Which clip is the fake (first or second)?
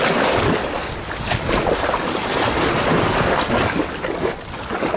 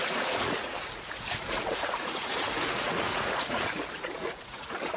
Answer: second